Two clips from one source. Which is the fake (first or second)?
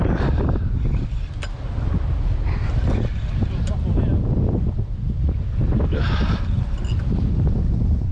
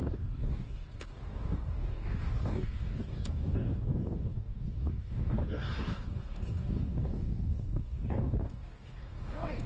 second